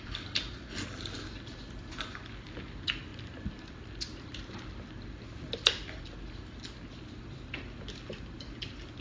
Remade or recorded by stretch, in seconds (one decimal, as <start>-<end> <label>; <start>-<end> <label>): 0.0-9.0 recorded